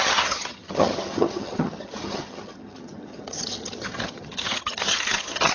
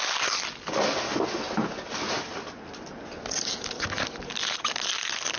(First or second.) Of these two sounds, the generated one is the first